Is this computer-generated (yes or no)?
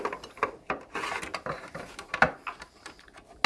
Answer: no